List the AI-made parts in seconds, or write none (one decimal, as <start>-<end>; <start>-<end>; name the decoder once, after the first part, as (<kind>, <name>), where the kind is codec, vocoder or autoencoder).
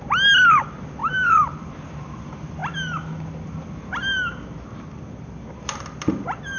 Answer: 1.0-2.1 (vocoder, BigVGAN v2)